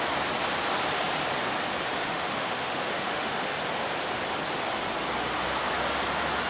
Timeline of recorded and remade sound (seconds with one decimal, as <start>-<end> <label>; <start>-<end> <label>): 0.0-2.0 recorded; 2.0-3.5 remade; 3.5-6.5 recorded